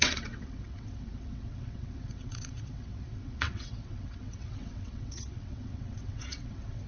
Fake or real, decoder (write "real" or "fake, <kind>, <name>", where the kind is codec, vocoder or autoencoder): fake, vocoder, WaveNeXt